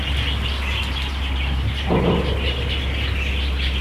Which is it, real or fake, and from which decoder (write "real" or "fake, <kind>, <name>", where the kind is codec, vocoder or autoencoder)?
real